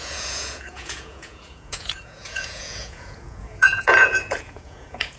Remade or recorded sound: remade